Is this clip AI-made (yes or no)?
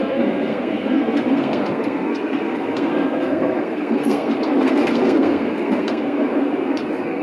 yes